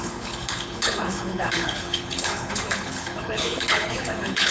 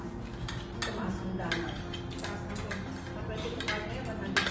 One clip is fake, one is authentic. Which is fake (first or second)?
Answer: first